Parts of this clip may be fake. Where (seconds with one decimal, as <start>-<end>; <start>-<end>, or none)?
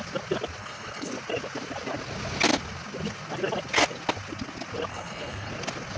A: 0.6-1.1; 4.9-5.5